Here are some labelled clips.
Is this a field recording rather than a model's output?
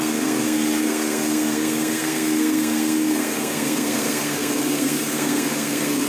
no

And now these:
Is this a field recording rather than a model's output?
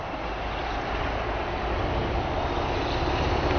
yes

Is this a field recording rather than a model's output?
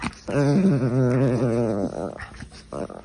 yes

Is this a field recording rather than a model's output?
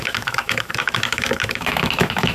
no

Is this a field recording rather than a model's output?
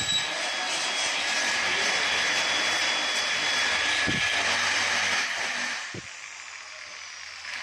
yes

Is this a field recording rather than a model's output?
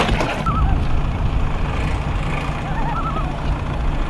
yes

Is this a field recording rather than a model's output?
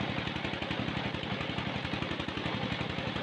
yes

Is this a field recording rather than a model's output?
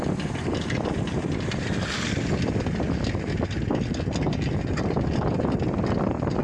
yes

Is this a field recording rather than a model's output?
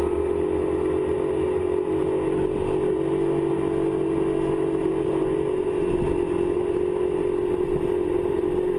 yes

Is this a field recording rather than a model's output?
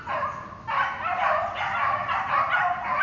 yes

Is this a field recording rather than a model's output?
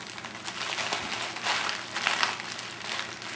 yes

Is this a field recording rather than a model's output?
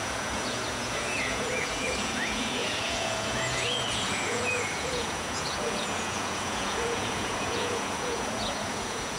no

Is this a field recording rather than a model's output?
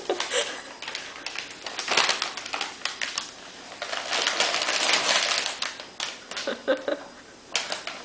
yes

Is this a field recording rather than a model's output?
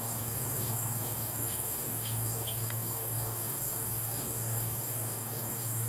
no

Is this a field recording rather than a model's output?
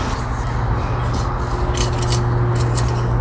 yes